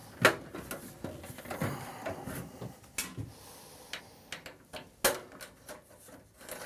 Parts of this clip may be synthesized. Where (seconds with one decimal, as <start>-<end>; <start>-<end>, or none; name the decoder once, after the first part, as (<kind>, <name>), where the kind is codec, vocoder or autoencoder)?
none